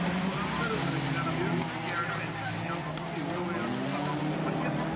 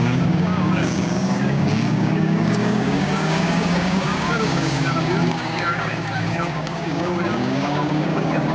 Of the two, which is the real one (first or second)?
first